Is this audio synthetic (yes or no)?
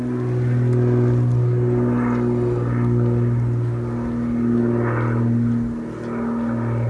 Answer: no